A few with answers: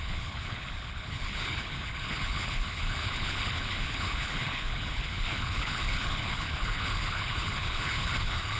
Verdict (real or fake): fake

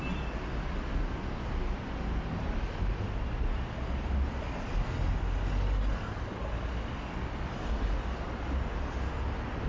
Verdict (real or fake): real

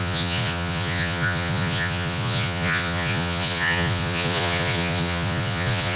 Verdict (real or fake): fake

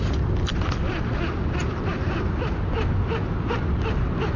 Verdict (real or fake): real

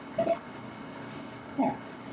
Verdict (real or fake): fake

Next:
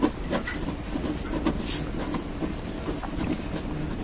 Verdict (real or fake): real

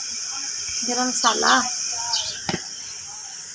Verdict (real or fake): real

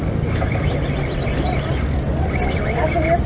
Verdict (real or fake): real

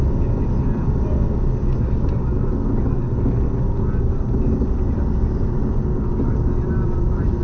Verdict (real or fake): real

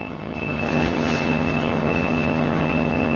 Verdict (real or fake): fake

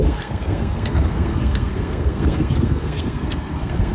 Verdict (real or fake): fake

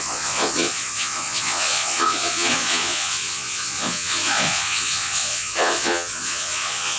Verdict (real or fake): fake